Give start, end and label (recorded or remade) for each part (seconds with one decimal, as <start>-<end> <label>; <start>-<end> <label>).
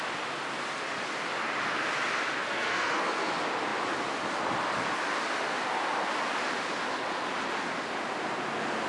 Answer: 0.0-2.4 recorded; 2.4-3.3 remade; 3.3-8.9 recorded